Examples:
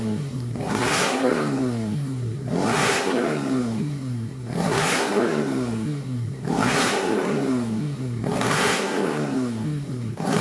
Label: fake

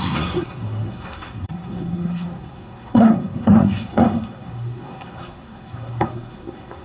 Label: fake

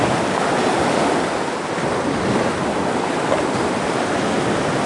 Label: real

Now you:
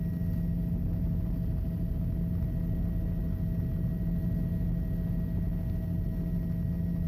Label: real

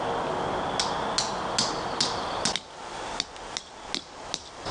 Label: real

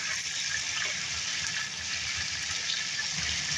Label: real